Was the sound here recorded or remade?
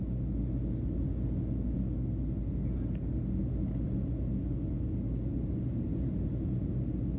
recorded